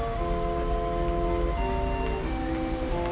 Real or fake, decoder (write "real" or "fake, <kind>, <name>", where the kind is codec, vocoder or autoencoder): real